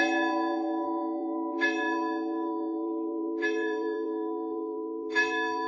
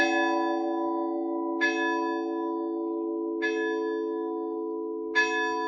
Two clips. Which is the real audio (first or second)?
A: second